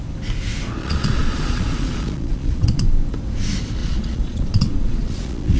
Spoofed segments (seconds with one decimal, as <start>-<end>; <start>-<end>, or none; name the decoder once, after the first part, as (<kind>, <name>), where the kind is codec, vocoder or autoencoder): 0.8-2.8 (vocoder, Vocos); 3.8-5.6